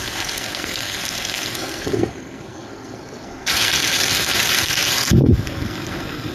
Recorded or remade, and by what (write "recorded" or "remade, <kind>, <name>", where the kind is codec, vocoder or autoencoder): remade, codec, SNAC